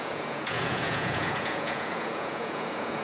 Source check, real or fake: fake